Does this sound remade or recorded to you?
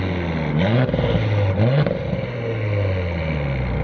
recorded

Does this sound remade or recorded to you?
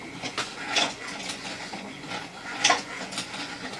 remade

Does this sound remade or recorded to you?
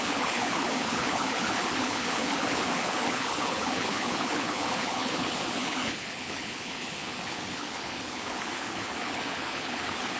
remade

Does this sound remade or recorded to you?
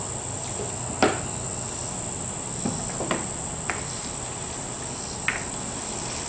recorded